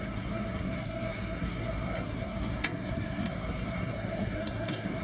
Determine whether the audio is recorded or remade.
remade